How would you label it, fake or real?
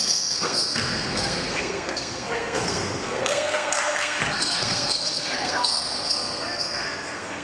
fake